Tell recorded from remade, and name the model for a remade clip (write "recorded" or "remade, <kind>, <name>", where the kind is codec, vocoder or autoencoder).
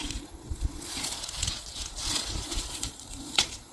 remade, vocoder, Vocos